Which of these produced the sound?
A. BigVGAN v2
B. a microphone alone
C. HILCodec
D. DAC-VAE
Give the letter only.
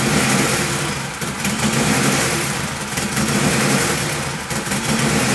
A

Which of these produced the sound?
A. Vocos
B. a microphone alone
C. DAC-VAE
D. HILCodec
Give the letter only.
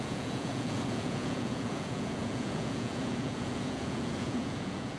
A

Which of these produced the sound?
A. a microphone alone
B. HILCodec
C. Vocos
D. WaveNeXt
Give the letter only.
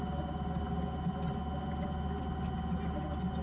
A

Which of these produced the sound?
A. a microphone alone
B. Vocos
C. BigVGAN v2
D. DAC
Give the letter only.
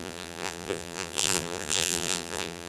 C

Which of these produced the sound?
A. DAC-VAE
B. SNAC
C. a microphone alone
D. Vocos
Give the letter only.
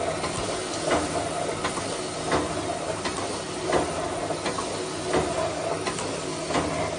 C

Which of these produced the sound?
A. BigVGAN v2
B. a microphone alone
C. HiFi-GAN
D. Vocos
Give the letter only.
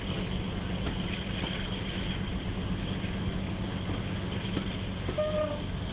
B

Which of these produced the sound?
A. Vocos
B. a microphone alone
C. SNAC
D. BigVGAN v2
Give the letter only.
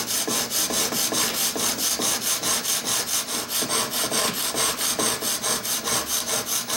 B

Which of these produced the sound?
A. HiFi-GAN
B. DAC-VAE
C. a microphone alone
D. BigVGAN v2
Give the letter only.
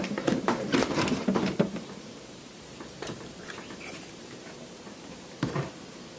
D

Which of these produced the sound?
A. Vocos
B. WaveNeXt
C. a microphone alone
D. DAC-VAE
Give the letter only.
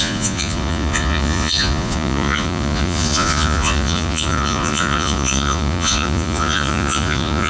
A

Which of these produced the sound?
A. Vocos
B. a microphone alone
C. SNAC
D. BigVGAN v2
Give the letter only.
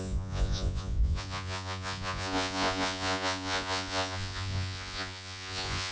A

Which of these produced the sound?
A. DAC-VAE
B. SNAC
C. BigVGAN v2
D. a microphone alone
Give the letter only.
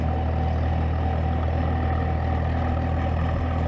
D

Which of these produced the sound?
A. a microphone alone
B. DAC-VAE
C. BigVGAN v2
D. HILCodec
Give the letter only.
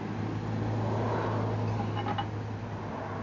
A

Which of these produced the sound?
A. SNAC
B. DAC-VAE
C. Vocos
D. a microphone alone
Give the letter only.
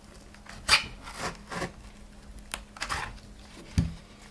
D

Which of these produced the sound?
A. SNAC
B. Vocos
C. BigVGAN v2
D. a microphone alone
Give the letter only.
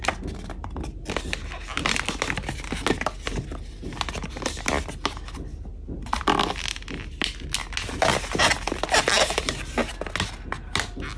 D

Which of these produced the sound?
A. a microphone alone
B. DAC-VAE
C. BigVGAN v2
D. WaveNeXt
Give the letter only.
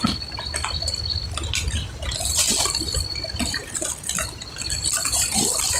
A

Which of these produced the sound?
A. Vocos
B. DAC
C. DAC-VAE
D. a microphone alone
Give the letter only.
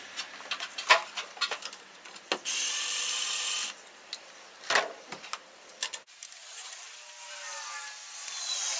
D